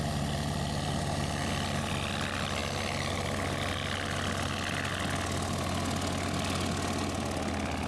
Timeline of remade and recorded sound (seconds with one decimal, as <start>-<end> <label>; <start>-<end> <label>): 0.0-7.9 recorded